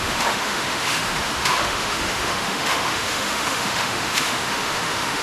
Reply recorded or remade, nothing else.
remade